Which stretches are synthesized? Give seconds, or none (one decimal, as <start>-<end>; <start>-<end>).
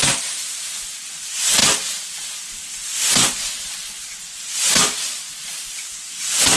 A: none